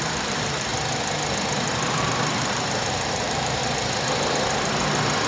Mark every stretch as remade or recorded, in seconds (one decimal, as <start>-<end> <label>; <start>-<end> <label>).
0.0-0.7 remade; 0.7-2.0 recorded; 2.0-3.6 remade; 3.6-5.3 recorded